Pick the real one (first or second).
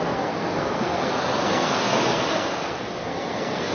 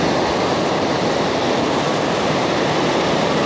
second